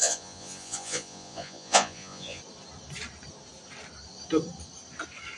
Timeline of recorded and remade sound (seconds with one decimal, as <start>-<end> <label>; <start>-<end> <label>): 0.0-2.4 remade; 2.4-5.4 recorded